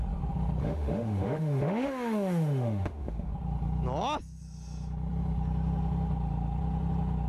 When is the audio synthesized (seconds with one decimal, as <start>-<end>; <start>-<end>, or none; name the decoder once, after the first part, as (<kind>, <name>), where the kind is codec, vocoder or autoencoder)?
0.6-3.3 (autoencoder, DAC-VAE)